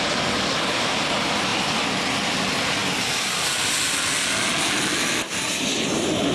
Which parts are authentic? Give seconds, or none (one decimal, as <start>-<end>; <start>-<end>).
0.0-6.3